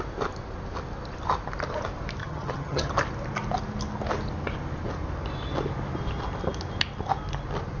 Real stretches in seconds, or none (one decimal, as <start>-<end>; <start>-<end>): 0.0-2.2; 2.9-7.8